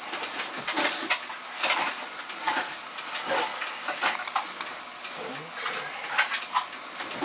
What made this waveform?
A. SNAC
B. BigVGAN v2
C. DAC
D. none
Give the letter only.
D